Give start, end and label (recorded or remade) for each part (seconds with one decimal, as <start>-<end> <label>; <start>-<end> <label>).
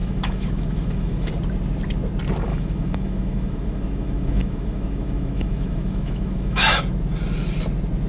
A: 0.0-1.3 remade; 1.3-2.5 recorded; 2.5-6.8 remade; 6.8-8.1 recorded